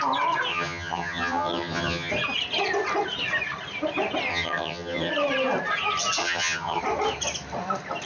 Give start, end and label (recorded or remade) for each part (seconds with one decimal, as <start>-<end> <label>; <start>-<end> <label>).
0.0-0.5 recorded; 0.5-2.1 remade; 2.1-4.3 recorded; 4.3-5.1 remade; 5.1-6.2 recorded; 6.2-6.8 remade; 6.8-8.1 recorded